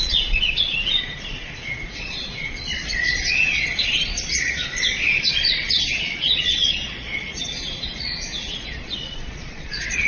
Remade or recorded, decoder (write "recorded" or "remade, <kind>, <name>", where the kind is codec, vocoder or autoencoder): remade, vocoder, Vocos